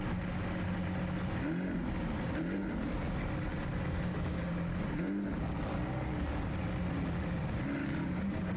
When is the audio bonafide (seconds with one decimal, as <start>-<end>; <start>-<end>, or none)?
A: 0.0-3.5; 4.5-5.7; 6.4-7.8

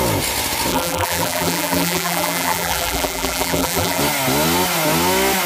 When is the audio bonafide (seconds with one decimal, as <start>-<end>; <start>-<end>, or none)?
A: 0.0-0.7; 4.0-5.5

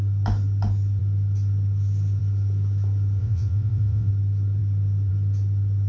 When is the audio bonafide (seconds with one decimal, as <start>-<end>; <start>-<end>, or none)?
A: 0.0-3.2; 4.1-5.9

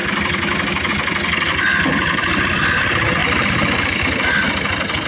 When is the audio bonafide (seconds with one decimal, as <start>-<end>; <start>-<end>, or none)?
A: 0.0-5.1

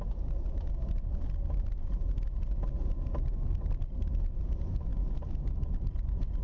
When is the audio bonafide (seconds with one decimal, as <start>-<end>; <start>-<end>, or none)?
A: 0.0-6.4